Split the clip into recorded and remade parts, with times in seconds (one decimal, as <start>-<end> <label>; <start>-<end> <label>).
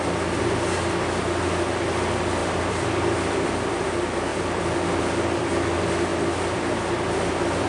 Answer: 0.0-2.4 recorded; 2.4-3.5 remade; 3.5-4.3 recorded; 4.3-5.0 remade; 5.0-7.7 recorded